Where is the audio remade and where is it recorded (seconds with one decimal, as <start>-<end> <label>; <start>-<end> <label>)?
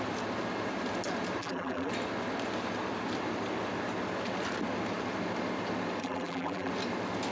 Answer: 0.0-1.4 recorded; 1.4-1.9 remade; 1.9-6.0 recorded; 6.0-6.7 remade; 6.7-7.3 recorded